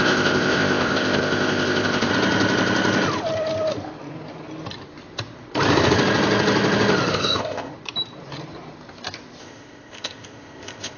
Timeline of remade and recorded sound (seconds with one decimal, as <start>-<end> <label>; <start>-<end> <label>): 0.0-2.1 remade; 2.1-7.1 recorded; 7.1-7.7 remade; 7.7-9.4 recorded; 9.4-11.0 remade